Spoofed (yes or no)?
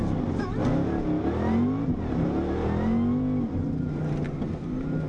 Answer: no